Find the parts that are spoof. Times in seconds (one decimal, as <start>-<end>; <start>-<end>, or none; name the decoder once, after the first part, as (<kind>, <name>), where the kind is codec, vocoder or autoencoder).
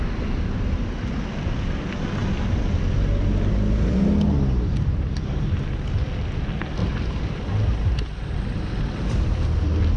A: none